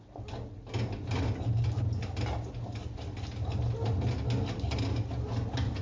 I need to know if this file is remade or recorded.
recorded